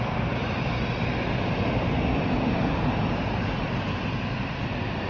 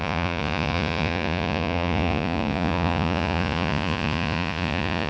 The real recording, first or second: first